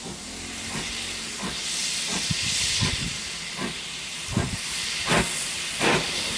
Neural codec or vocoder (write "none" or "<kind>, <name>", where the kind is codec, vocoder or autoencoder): none